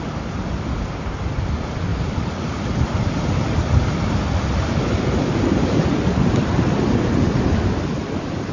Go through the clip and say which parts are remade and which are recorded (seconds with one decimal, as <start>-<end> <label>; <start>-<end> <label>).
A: 0.0-8.5 recorded